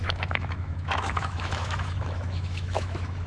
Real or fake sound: fake